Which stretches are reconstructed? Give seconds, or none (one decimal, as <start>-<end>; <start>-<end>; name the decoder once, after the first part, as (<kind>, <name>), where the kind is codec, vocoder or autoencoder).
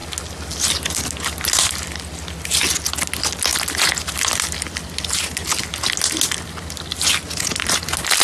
none